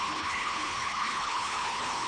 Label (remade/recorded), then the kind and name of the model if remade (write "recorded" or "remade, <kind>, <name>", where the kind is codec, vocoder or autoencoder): remade, codec, HILCodec